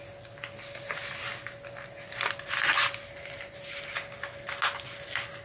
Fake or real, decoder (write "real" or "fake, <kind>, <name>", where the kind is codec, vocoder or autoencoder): real